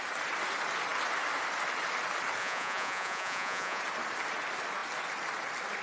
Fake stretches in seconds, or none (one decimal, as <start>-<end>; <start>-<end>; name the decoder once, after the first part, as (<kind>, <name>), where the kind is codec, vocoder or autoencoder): 2.4-3.8 (vocoder, Vocos)